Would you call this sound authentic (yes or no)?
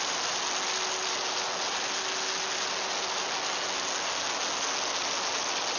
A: yes